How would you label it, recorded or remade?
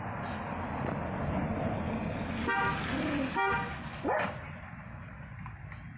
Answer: recorded